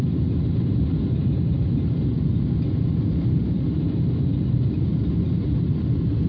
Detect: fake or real real